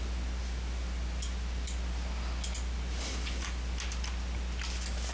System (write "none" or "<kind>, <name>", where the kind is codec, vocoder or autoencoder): none